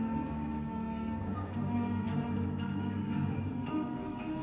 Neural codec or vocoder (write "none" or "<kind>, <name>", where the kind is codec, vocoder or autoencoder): codec, DAC